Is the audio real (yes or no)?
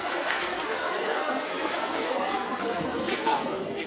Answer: no